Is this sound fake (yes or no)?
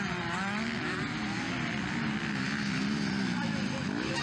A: no